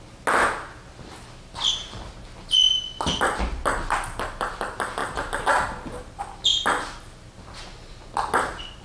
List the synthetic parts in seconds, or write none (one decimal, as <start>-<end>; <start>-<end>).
5.0-6.2